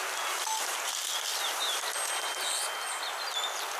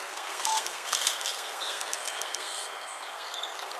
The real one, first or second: first